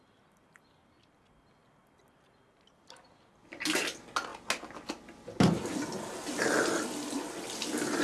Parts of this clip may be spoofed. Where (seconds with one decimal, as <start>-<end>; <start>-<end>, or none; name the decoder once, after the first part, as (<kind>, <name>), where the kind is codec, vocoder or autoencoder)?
none